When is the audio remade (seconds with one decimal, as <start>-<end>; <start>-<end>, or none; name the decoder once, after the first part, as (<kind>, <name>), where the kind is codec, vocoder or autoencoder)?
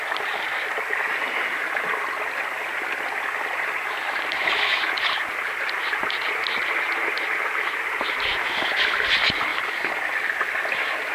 none